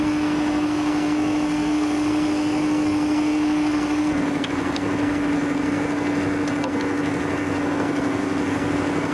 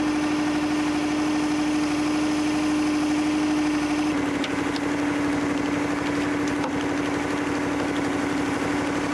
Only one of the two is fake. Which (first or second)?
first